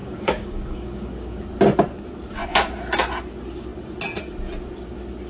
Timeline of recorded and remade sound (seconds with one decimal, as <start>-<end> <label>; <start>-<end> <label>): 0.0-1.4 remade; 1.4-5.3 recorded